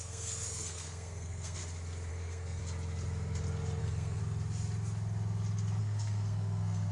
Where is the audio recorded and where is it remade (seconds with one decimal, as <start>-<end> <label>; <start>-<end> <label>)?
0.0-1.6 remade; 1.6-2.1 recorded; 2.1-2.6 remade; 2.6-3.8 recorded; 3.8-4.2 remade; 4.2-5.8 recorded; 5.8-6.9 remade